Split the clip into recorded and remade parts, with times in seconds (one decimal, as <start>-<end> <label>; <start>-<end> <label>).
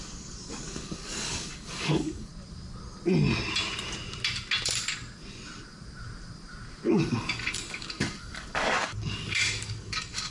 0.0-2.3 remade; 2.3-6.9 recorded; 6.9-10.3 remade